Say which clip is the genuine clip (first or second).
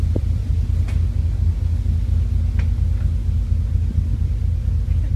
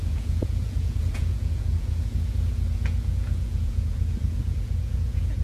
first